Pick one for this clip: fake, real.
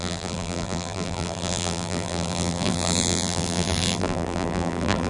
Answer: fake